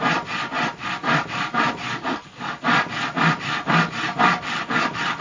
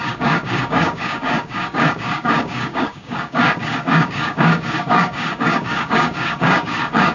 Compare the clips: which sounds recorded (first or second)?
first